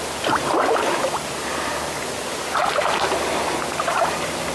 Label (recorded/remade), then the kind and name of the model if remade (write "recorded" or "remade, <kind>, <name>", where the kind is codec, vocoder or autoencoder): recorded